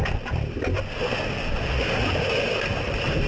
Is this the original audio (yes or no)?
yes